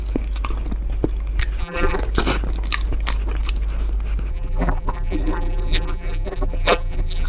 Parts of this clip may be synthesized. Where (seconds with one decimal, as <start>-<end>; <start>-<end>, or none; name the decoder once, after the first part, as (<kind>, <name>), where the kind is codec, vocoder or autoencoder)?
1.6-2.0 (vocoder, BigVGAN v2); 4.3-7.3